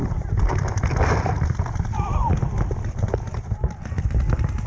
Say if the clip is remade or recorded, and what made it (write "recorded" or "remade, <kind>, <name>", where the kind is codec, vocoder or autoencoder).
recorded